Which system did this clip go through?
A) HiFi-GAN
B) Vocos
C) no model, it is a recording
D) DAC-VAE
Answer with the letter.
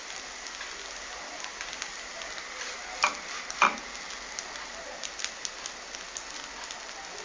C